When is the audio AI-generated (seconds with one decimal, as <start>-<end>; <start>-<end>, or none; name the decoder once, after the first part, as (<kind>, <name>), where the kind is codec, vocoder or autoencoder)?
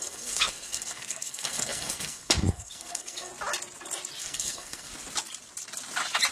0.0-3.3 (codec, SNAC); 4.2-4.9